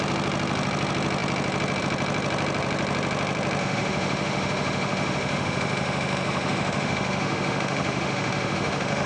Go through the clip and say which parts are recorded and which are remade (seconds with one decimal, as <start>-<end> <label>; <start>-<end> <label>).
0.0-3.6 recorded; 3.6-9.1 remade